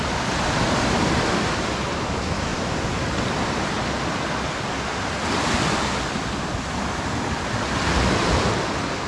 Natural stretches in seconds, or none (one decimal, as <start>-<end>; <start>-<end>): 0.0-9.1

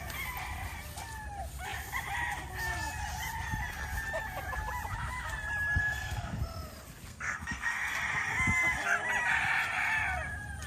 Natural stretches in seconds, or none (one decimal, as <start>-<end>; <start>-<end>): 0.0-5.8; 6.4-7.1; 7.9-10.7

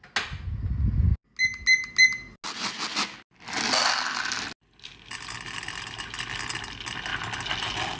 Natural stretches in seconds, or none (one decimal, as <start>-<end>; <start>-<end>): 0.0-8.0

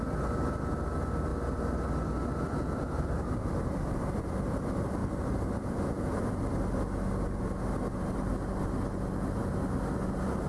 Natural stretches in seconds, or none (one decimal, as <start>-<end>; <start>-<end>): 0.0-1.3; 4.2-5.0; 6.3-10.5